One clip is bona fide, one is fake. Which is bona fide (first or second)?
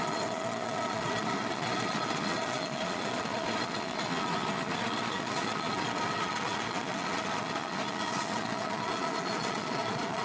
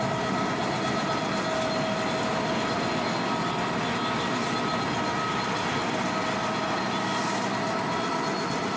second